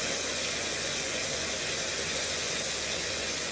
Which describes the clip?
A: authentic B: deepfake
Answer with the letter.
B